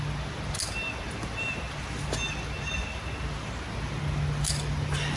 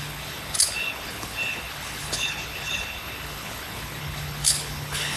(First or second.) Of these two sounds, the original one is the first